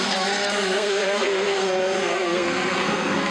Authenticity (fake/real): fake